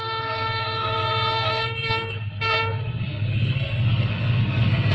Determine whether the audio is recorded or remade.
remade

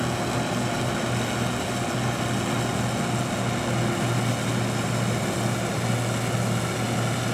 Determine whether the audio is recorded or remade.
recorded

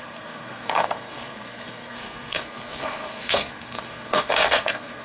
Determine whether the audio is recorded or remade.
remade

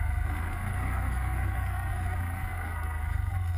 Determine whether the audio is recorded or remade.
remade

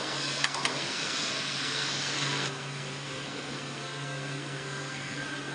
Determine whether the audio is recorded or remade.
remade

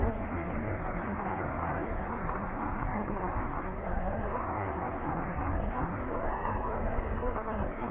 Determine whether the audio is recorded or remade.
remade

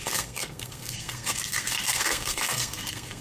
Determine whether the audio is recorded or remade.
remade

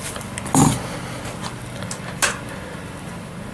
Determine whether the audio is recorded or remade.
recorded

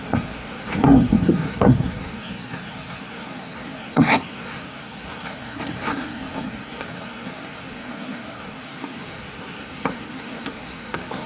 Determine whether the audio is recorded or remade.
remade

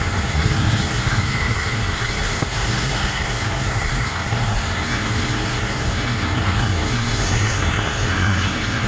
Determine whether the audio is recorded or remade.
remade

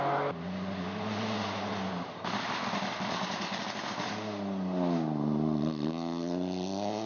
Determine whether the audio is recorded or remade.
recorded